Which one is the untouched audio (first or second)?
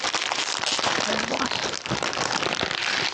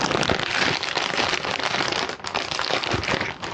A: second